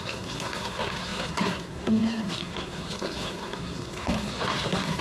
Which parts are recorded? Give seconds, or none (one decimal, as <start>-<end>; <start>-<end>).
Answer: none

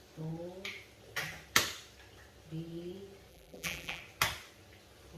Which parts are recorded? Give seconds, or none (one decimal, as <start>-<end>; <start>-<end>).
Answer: 0.0-3.3; 4.0-5.2

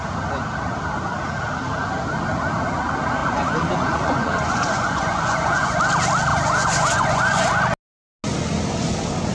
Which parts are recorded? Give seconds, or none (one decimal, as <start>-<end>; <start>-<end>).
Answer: 0.0-3.2; 5.8-6.3; 7.6-9.3

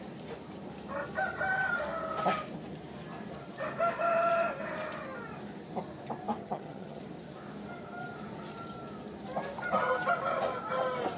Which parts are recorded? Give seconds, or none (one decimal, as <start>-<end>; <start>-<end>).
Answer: 0.0-6.4; 7.0-11.2

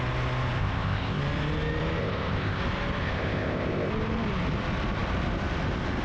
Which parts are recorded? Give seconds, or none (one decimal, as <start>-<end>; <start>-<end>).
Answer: 0.0-0.6; 1.2-2.0; 2.6-3.0; 3.9-6.0

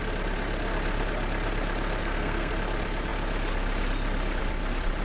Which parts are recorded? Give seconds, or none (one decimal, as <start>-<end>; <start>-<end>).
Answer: 0.0-2.0; 2.5-5.0